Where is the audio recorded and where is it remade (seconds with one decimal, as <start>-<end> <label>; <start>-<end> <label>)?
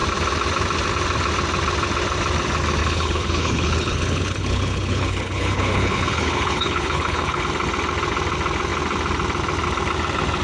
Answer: 0.0-2.8 recorded; 2.8-7.4 remade; 7.4-10.4 recorded